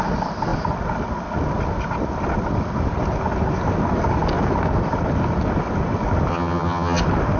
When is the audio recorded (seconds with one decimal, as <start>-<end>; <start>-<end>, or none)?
0.0-6.3; 7.0-7.4